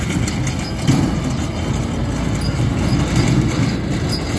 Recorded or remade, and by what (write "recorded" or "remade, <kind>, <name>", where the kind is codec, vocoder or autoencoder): recorded